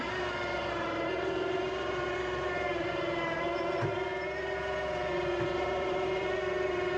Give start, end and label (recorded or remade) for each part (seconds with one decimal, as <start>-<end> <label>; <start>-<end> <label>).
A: 0.0-4.1 remade; 4.1-5.5 recorded; 5.5-7.0 remade